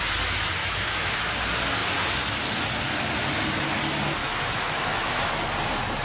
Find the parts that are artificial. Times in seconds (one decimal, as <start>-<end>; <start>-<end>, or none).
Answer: 0.6-1.2; 4.2-5.3